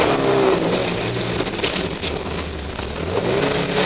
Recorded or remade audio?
recorded